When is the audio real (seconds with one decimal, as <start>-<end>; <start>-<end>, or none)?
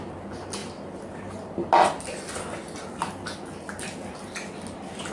0.0-5.1